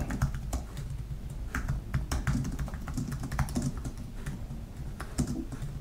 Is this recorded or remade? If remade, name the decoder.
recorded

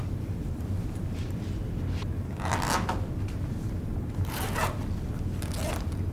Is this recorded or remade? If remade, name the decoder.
recorded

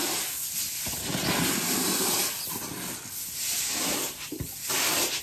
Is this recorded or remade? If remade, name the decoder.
recorded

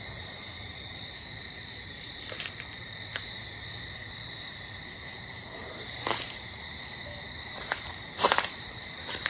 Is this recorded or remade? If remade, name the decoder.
remade, vocoder, BigVGAN v2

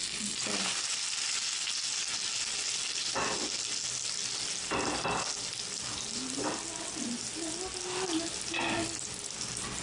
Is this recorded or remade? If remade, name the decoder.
recorded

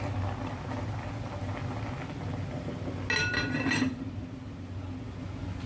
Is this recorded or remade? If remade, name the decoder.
recorded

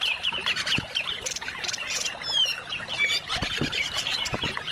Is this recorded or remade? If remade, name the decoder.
remade, vocoder, BigVGAN v2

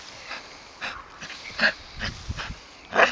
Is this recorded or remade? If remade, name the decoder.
recorded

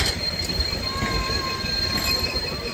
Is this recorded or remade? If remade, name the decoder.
recorded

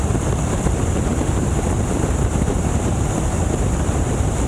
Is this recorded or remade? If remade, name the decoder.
remade, vocoder, BigVGAN v2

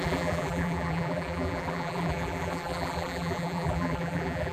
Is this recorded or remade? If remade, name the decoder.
remade, vocoder, BigVGAN v2